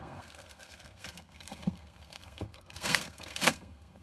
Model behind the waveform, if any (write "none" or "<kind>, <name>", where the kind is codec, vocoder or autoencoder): codec, SNAC